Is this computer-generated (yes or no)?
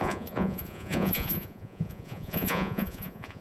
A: yes